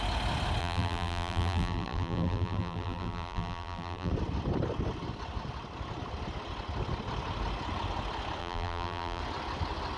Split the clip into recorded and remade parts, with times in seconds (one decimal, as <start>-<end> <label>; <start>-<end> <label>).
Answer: 0.0-0.6 recorded; 0.6-4.1 remade; 4.1-8.4 recorded; 8.4-9.2 remade; 9.2-10.0 recorded